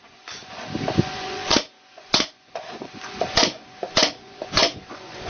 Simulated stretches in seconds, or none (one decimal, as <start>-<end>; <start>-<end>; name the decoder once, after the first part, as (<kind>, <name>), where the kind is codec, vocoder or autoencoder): 0.0-0.4 (vocoder, Vocos); 1.0-5.3

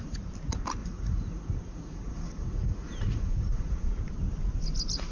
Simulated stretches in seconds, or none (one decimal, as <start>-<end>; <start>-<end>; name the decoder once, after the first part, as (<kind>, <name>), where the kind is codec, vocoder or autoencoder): 0.8-3.9 (vocoder, Vocos)

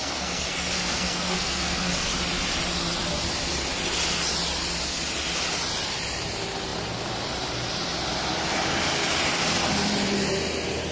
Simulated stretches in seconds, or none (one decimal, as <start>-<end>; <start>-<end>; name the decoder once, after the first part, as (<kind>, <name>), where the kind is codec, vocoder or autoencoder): 0.0-2.1 (codec, SNAC)

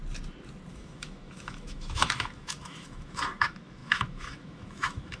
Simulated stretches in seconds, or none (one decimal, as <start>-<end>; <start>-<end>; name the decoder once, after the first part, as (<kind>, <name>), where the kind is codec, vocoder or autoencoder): 0.7-5.2 (autoencoder, DAC-VAE)

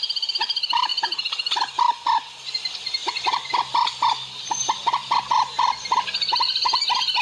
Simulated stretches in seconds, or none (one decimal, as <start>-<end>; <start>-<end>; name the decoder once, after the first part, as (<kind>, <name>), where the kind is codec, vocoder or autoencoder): none